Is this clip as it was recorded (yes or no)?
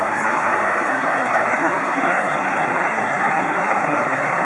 no